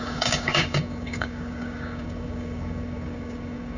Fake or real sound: fake